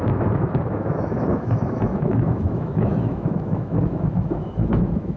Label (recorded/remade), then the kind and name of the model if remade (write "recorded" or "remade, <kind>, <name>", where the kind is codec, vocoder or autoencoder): remade, autoencoder, DAC-VAE